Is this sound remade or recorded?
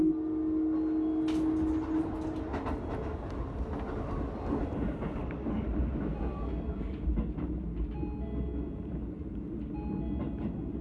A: recorded